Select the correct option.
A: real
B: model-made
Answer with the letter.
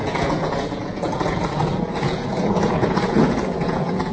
B